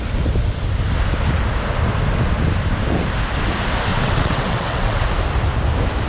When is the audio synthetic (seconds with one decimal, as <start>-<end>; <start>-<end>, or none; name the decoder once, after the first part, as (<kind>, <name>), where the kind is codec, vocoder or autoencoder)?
3.9-5.1 (vocoder, WaveNeXt)